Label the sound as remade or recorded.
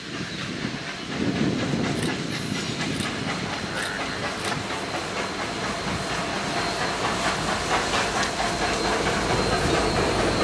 recorded